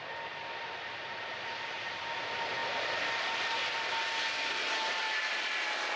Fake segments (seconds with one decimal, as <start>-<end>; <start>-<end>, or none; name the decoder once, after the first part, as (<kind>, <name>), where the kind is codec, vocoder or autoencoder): none